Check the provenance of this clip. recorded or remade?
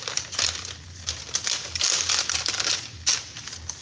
recorded